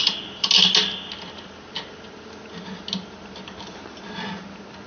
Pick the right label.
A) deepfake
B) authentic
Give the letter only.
B